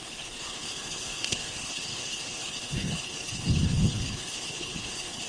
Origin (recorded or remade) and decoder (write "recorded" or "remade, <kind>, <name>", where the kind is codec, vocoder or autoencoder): remade, codec, HILCodec